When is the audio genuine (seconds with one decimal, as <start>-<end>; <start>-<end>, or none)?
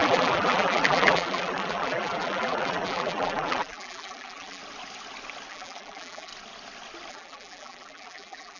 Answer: 4.6-5.5; 6.3-7.1